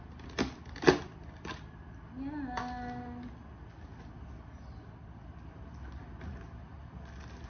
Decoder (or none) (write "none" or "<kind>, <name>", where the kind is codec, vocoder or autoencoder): none